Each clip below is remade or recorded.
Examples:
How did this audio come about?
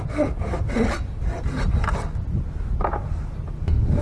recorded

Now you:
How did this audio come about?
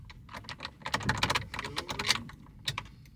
recorded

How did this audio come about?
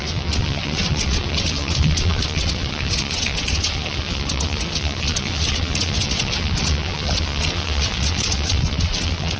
remade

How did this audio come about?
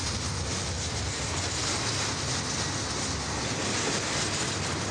recorded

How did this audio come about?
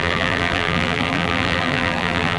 remade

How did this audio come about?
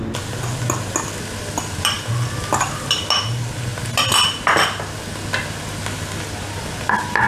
recorded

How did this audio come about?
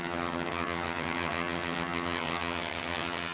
remade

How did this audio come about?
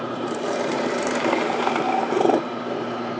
remade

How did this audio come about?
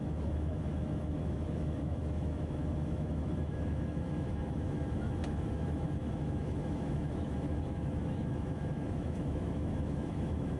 remade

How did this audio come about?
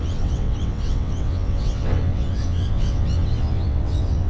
remade